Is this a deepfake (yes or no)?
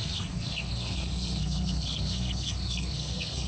yes